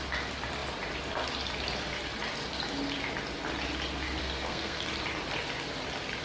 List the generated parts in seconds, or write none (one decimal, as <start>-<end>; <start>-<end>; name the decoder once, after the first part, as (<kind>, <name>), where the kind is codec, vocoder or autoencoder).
4.2-4.8 (codec, SNAC)